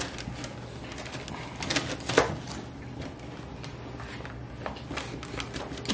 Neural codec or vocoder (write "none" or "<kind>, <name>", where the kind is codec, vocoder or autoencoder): none